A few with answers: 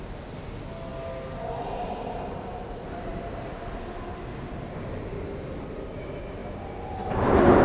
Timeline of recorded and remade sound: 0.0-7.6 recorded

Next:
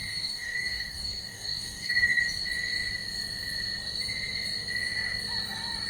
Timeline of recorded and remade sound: 0.0-2.2 remade; 2.2-5.9 recorded

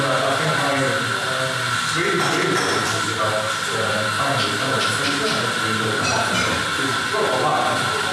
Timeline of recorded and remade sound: 0.0-2.8 recorded; 2.8-6.3 remade; 6.3-8.1 recorded